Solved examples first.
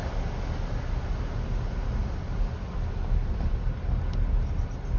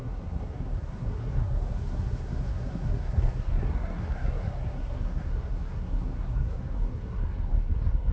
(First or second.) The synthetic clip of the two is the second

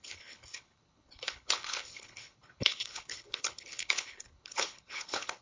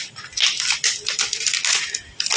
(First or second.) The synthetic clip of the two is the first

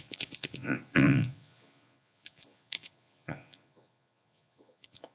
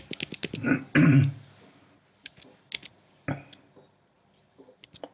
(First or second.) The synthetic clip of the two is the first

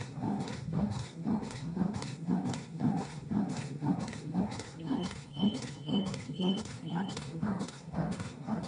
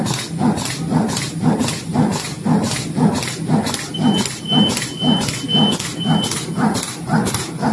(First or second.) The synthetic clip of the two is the first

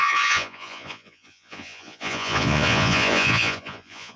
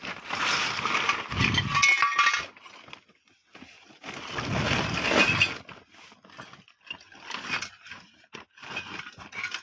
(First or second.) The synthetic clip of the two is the first